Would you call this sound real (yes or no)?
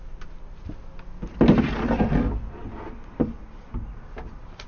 yes